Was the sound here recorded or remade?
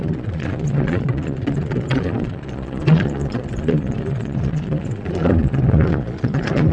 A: remade